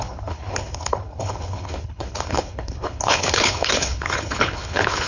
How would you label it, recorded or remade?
remade